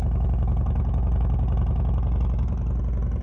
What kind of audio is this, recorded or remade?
recorded